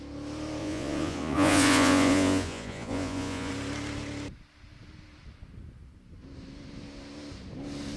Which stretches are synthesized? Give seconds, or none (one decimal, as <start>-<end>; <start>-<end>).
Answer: 0.6-3.5